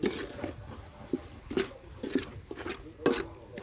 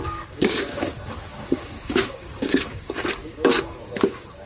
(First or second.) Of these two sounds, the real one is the first